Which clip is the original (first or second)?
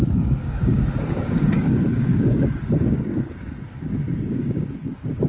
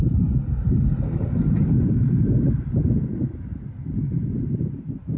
second